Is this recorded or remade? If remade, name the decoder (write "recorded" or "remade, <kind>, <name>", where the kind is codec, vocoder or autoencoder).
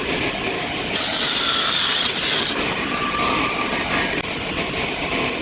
recorded